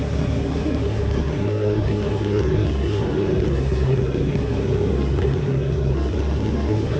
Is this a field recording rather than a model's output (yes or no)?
no